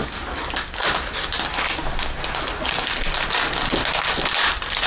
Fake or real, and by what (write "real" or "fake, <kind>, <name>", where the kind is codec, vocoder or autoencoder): real